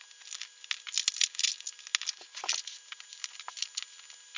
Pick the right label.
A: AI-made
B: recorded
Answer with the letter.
B